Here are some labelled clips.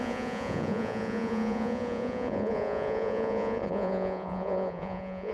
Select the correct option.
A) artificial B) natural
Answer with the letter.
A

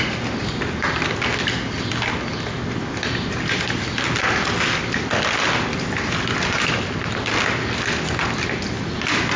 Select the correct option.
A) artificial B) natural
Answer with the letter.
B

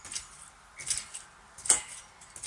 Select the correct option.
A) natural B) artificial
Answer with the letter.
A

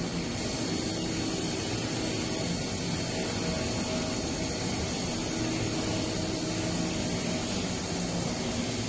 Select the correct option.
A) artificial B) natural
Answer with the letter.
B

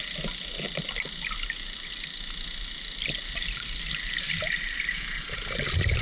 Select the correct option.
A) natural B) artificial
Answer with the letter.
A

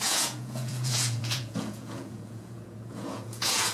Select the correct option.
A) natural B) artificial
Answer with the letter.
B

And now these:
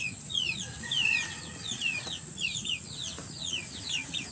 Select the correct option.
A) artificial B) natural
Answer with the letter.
A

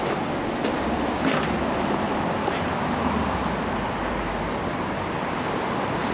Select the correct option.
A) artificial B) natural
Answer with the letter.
B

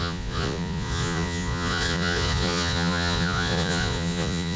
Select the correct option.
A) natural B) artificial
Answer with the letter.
B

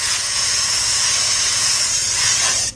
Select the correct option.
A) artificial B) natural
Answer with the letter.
A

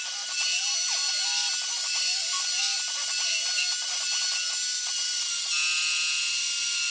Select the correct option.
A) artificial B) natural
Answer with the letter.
B